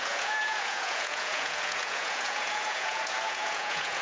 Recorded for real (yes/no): no